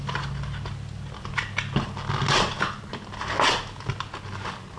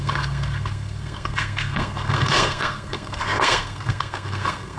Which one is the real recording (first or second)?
first